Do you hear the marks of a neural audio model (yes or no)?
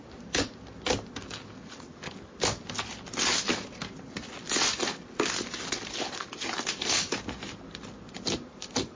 no